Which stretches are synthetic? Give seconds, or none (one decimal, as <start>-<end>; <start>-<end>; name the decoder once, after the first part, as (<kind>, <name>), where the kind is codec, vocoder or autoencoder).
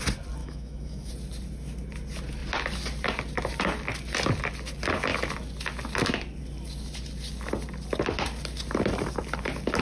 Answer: 0.4-1.1 (autoencoder, DAC-VAE)